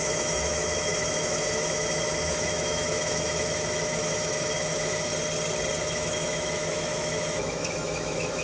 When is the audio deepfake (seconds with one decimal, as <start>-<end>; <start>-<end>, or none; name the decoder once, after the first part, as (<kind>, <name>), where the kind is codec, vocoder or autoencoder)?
0.0-5.1 (autoencoder, DAC-VAE); 5.8-8.4